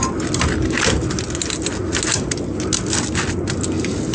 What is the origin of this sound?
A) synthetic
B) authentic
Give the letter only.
B